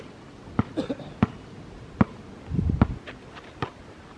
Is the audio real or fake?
real